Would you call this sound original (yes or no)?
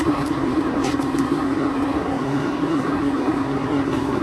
no